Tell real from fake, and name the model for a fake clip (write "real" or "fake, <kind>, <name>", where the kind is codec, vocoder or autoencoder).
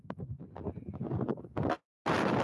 real